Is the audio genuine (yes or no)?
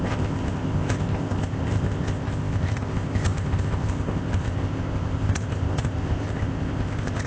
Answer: no